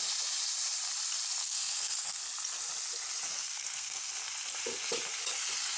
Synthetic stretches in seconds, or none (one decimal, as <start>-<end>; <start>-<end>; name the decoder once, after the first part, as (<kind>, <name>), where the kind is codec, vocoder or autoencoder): 1.4-2.2 (codec, SNAC); 3.4-4.1